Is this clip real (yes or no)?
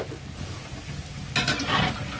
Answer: yes